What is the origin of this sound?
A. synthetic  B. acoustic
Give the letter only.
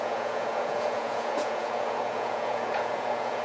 A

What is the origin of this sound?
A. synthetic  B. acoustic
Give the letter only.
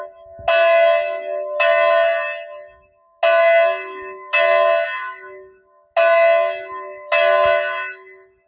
B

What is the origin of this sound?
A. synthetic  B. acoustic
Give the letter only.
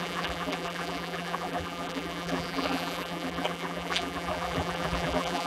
A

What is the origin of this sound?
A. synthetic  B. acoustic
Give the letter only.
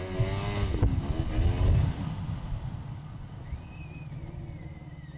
B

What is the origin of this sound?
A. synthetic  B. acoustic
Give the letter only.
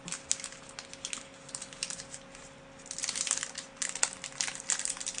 B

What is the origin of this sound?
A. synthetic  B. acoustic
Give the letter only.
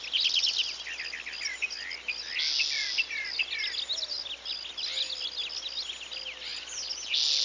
B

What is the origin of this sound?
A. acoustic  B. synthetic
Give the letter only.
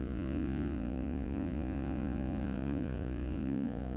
B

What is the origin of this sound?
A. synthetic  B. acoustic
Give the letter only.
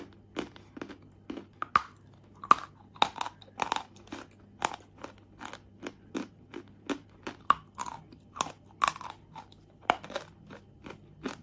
B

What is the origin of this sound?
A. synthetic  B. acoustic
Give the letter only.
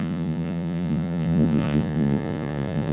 A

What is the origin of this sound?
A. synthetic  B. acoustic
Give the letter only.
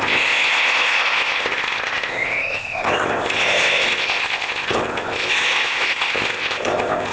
A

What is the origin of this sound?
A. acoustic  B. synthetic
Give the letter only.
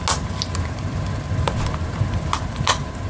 A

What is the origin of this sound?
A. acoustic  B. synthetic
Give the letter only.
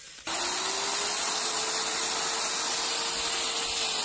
A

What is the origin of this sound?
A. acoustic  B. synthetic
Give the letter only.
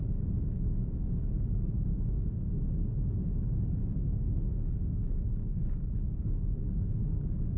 B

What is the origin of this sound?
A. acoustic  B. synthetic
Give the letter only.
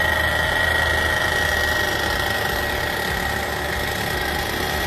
A